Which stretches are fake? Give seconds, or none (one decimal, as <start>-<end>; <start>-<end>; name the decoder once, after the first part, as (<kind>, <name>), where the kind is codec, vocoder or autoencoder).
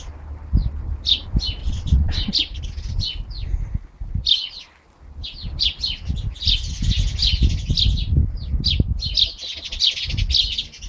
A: 1.6-2.3 (vocoder, WaveNeXt)